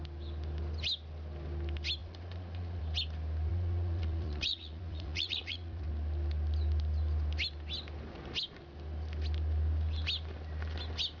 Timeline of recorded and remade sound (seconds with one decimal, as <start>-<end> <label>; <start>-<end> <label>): 0.0-2.0 recorded; 2.0-2.8 remade; 2.8-3.5 recorded; 3.5-5.9 remade; 5.9-11.2 recorded